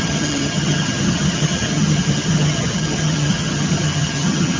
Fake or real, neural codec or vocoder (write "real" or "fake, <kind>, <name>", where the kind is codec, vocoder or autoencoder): fake, vocoder, HiFi-GAN